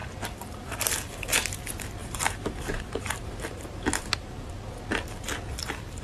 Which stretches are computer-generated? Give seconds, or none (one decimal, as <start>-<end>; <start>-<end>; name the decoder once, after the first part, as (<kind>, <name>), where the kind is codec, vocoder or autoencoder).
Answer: 0.0-1.6 (vocoder, BigVGAN v2); 2.0-4.5